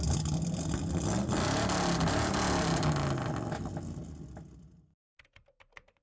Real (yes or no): yes